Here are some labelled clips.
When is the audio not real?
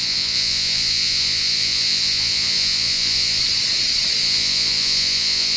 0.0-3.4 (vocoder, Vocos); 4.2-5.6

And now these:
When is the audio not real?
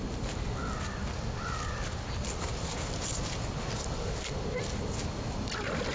none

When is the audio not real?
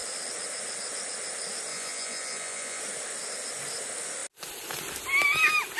1.7-2.8 (vocoder, Vocos)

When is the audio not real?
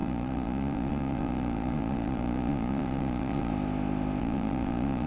0.0-3.5 (vocoder, Vocos); 4.2-5.1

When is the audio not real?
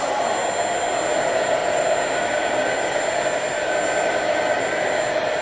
none